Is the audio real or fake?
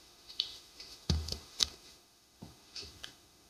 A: fake